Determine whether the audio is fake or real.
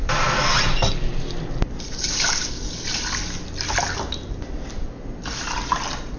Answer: real